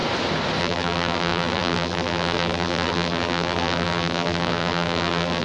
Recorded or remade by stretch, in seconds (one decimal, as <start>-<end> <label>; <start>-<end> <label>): 0.0-0.6 recorded; 0.6-5.4 remade